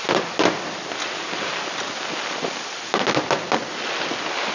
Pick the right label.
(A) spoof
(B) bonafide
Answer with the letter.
B